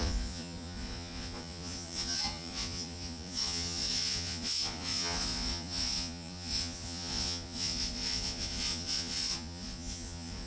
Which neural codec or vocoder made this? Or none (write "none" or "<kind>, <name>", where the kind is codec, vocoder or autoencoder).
vocoder, Vocos